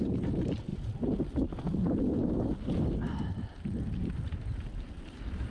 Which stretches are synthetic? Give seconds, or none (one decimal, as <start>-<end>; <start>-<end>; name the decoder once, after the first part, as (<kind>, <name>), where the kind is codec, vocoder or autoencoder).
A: 0.0-0.7 (vocoder, BigVGAN v2); 4.0-5.5